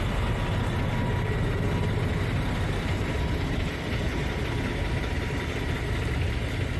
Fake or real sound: real